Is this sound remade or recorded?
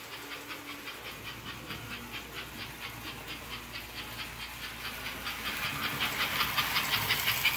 recorded